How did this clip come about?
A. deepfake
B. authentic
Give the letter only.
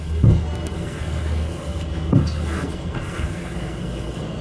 A